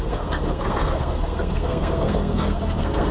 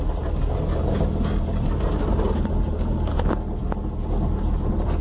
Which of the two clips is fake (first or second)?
first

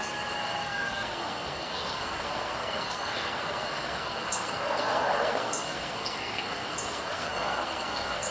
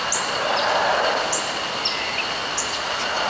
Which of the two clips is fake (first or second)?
first